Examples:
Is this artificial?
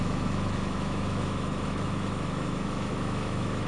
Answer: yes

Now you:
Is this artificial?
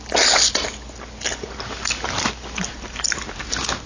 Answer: no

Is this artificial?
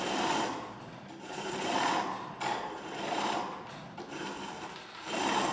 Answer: no